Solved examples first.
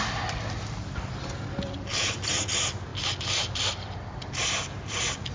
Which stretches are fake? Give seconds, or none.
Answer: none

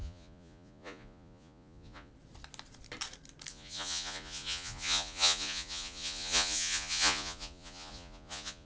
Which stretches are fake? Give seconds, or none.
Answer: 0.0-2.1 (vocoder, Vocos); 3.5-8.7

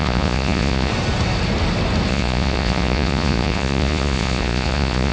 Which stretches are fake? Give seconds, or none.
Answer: 0.0-0.9 (vocoder, Vocos); 2.1-5.1

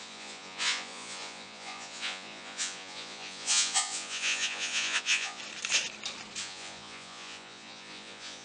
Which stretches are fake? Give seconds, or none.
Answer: 0.0-5.4 (vocoder, Vocos); 6.4-8.4

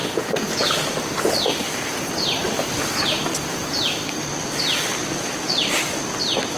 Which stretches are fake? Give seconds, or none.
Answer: 0.0-0.9 (vocoder, Vocos)

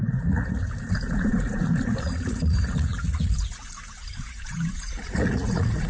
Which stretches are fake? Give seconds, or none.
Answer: 0.0-5.9 (vocoder, Vocos)

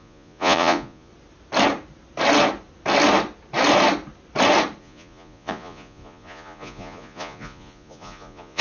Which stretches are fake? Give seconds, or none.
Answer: 0.0-1.1 (vocoder, Vocos); 4.8-8.6

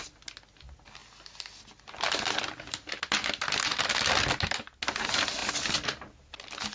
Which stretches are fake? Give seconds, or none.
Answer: none